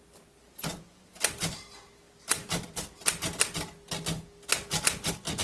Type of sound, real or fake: real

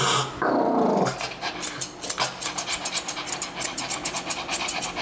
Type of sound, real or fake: real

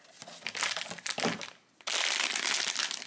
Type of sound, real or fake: real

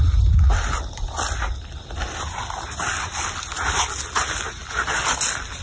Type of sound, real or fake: real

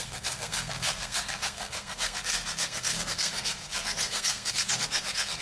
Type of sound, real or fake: fake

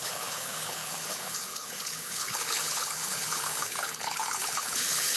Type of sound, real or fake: fake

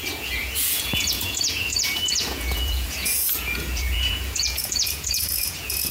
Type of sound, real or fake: fake